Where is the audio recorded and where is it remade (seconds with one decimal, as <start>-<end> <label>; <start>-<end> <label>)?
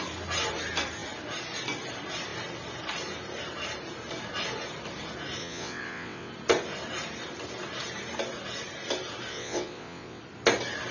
0.0-5.4 recorded; 5.4-6.3 remade; 6.3-9.3 recorded; 9.3-10.2 remade; 10.2-10.9 recorded